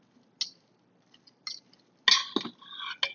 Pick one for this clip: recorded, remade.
recorded